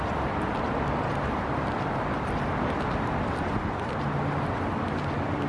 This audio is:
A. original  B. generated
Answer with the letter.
A